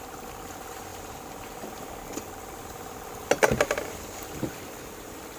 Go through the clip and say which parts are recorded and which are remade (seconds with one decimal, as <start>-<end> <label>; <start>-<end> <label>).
0.0-5.4 recorded